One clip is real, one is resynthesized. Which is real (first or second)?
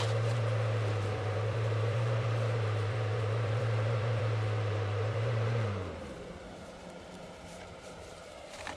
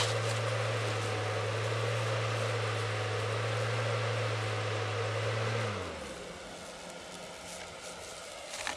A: second